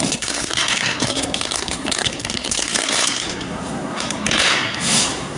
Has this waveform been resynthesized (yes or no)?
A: yes